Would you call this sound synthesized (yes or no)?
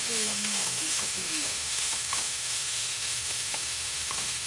yes